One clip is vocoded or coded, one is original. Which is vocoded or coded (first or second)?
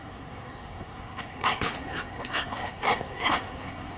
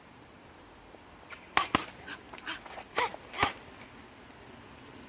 first